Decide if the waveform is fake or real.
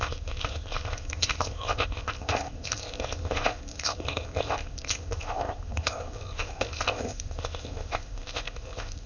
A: fake